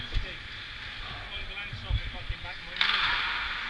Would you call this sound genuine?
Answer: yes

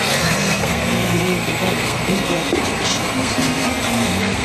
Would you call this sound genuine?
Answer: no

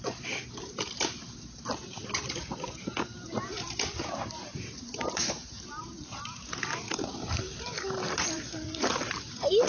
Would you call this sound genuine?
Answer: no